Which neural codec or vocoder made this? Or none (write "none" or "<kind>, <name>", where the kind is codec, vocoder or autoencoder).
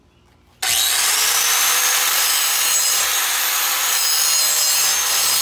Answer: none